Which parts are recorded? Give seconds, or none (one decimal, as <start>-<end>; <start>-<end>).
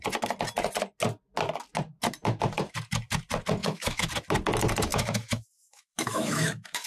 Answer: 0.0-3.6; 4.1-4.9